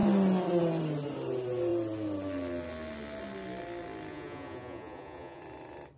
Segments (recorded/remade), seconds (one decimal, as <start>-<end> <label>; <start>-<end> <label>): 0.0-4.1 recorded; 4.1-5.4 remade; 5.4-6.0 recorded